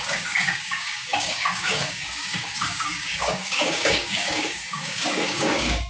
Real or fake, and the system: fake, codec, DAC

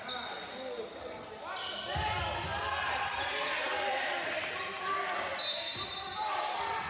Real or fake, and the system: real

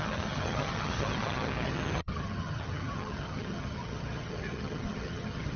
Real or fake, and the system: fake, vocoder, HiFi-GAN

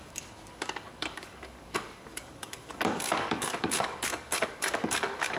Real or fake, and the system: fake, codec, DAC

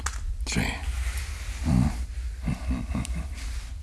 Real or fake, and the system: real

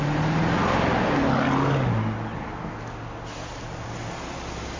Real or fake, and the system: real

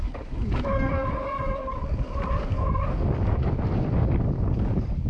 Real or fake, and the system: fake, codec, DAC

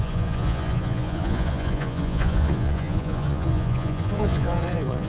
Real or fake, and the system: fake, vocoder, Vocos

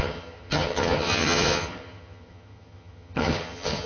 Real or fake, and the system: fake, vocoder, HiFi-GAN